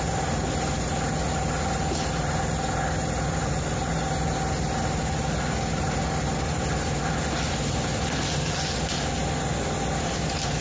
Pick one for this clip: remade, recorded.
recorded